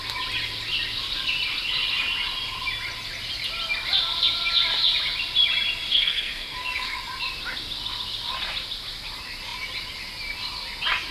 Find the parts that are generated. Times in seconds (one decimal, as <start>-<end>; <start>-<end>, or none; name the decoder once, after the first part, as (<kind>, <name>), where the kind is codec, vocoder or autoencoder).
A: 5.9-7.0 (codec, SNAC)